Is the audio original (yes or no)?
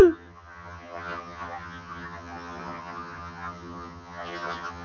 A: no